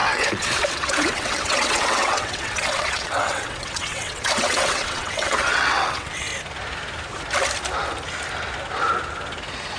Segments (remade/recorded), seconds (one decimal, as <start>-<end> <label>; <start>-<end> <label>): 0.0-6.3 remade; 6.3-9.8 recorded